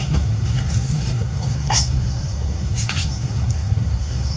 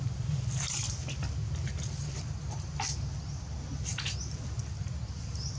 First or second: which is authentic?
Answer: second